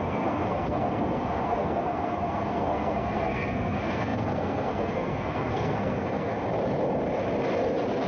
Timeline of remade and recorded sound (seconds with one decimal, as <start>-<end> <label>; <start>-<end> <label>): 0.0-6.3 remade; 6.3-8.1 recorded